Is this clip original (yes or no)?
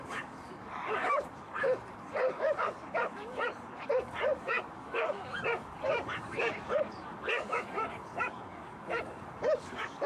no